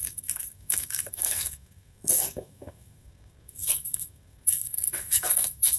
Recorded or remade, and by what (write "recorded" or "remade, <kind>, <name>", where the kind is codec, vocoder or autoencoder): remade, codec, SNAC